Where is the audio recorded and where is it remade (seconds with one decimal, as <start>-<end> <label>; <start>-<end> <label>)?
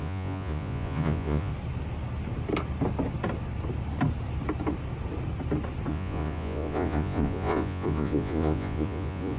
0.0-1.5 remade; 1.5-5.9 recorded; 5.9-9.4 remade